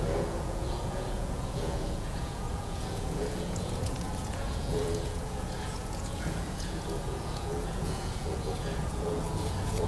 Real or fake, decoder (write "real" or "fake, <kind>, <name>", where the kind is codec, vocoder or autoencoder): fake, vocoder, Vocos